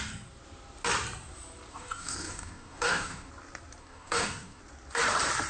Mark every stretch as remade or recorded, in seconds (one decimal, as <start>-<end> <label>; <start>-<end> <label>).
0.0-1.7 recorded; 1.7-3.3 remade; 3.3-3.8 recorded; 3.8-4.6 remade; 4.6-5.5 recorded